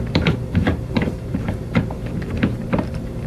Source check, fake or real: fake